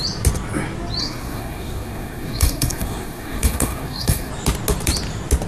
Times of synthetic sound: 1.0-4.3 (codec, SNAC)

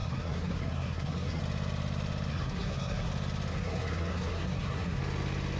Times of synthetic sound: 0.0-1.4 (codec, SNAC); 2.3-3.1; 3.5-5.0

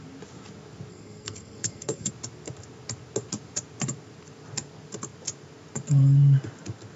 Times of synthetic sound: 0.9-2.1 (codec, SNAC)

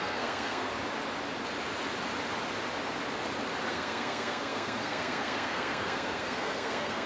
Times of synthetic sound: 0.0-0.7 (codec, SNAC); 3.7-7.1

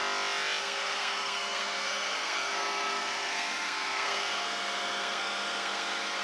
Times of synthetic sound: 0.6-6.2 (codec, SNAC)